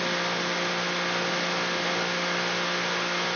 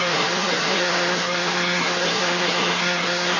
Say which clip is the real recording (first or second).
first